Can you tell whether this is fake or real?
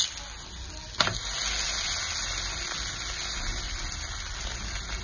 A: real